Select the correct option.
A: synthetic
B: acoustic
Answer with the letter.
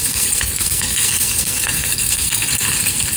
A